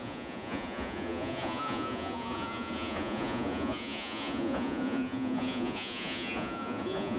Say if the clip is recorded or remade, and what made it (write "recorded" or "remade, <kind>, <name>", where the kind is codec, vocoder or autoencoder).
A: remade, vocoder, Vocos